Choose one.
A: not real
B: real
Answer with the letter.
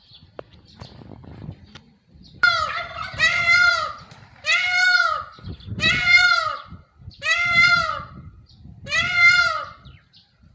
A